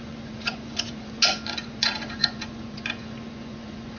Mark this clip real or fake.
fake